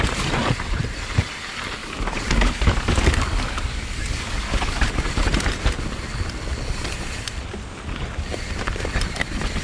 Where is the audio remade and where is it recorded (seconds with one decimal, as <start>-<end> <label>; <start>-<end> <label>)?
0.0-1.8 recorded; 1.8-4.9 remade; 4.9-9.6 recorded